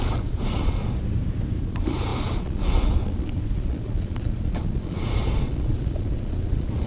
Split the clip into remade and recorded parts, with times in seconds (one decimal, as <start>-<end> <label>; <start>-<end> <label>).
0.0-0.8 remade; 0.8-1.6 recorded; 1.6-6.9 remade